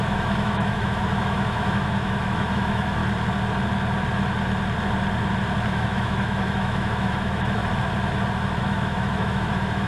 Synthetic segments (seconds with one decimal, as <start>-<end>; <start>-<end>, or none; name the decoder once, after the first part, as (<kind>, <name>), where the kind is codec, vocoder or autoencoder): 0.0-3.0 (autoencoder, DAC-VAE); 5.7-7.6; 8.6-9.9